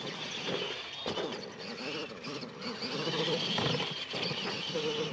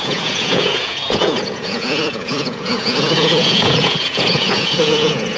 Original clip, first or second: first